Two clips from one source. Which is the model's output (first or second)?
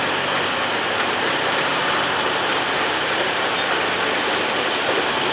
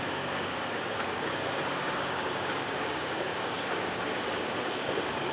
second